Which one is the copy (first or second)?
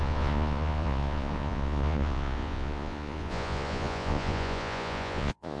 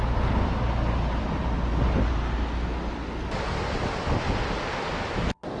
first